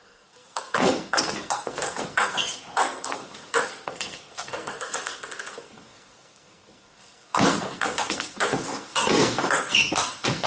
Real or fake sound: fake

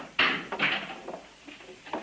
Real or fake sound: real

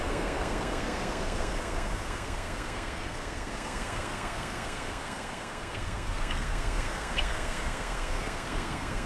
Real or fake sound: fake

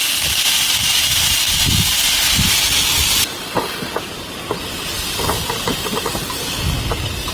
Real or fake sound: real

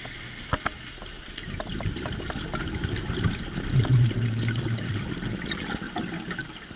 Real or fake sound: real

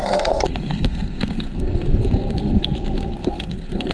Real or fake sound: fake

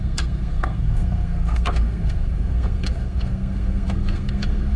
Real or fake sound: fake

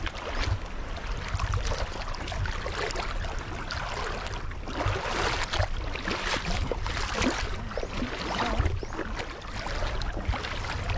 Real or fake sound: real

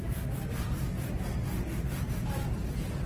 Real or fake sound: real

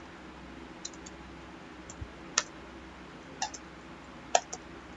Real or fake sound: real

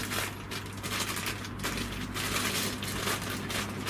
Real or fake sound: real